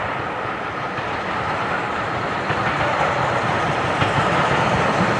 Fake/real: fake